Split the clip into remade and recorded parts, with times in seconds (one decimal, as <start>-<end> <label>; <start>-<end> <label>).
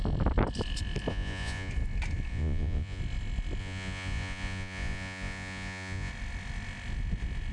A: 0.0-1.1 recorded; 1.1-1.7 remade; 1.7-2.3 recorded; 2.3-3.0 remade; 3.0-3.6 recorded; 3.6-6.1 remade; 6.1-7.5 recorded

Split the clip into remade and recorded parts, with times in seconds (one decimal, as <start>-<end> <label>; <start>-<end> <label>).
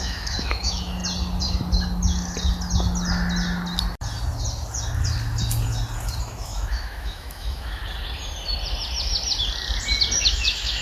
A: 0.0-1.0 remade; 1.0-6.2 recorded; 6.2-7.8 remade; 7.8-10.3 recorded; 10.3-10.8 remade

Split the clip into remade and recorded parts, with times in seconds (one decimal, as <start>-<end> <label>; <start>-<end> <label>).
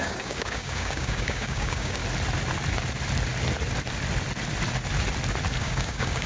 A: 0.0-2.0 remade; 2.0-5.6 recorded; 5.6-6.3 remade